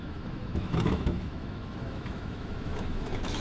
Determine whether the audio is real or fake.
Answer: fake